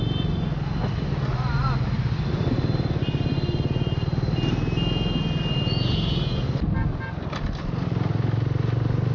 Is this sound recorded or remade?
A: recorded